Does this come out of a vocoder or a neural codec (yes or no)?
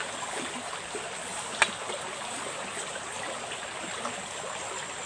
no